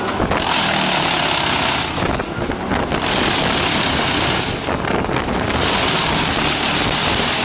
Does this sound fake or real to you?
real